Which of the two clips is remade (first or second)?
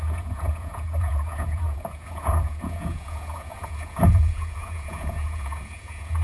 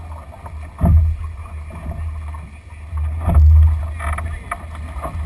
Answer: first